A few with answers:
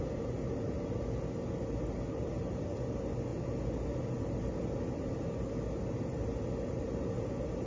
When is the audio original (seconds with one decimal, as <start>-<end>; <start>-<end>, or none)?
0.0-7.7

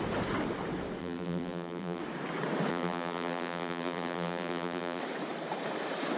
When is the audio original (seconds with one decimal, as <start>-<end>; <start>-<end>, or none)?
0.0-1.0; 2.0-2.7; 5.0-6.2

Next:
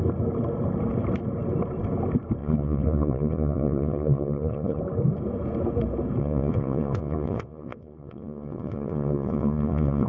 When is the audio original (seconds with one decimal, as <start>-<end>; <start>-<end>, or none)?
0.0-2.4; 4.8-6.2

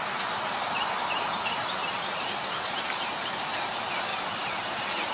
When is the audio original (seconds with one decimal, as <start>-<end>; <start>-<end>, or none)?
none

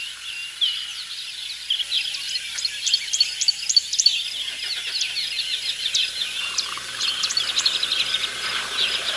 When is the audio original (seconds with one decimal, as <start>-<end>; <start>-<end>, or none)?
0.4-3.0; 4.1-5.4

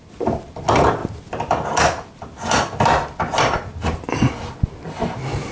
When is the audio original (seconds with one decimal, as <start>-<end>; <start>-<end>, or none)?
0.0-5.5